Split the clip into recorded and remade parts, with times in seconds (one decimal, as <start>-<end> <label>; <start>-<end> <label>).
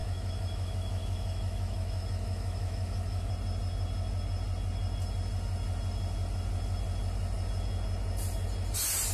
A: 0.0-3.3 remade; 3.3-9.1 recorded